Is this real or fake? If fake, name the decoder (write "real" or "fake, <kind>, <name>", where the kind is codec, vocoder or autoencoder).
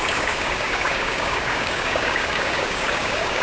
fake, codec, DAC